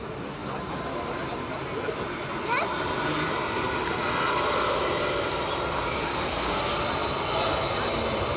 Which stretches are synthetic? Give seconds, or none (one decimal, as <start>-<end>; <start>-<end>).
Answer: 6.1-6.7